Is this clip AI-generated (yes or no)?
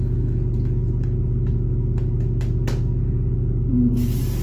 no